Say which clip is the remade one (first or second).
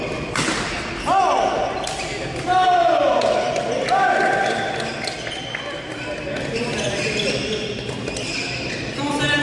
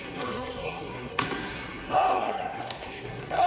second